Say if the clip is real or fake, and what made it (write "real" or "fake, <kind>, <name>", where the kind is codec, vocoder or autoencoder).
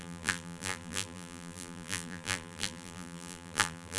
fake, vocoder, BigVGAN v2